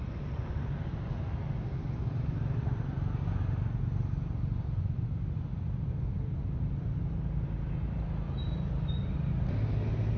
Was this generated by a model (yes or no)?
no